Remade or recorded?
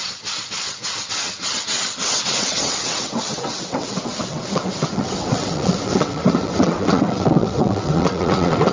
remade